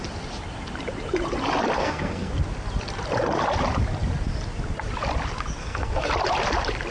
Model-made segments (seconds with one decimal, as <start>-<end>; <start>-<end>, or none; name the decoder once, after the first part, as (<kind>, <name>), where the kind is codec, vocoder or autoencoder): 1.8-2.3 (codec, SNAC); 5.6-6.1